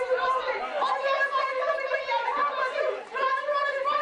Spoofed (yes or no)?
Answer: no